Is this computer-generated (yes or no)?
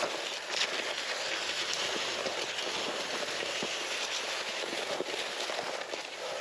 no